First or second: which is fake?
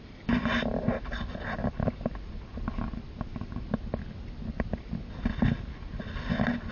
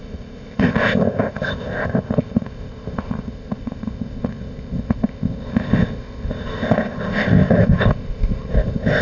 second